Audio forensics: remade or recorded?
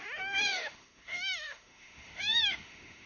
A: remade